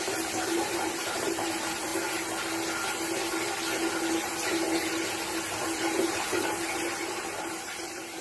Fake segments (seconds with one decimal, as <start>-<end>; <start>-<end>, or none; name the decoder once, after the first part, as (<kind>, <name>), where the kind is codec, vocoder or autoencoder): 0.0-1.9 (vocoder, BigVGAN v2); 5.5-8.2